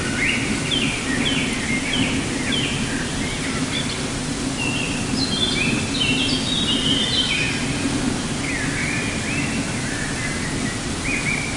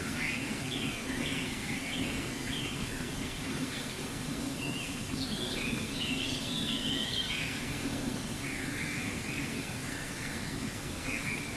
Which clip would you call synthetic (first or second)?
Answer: second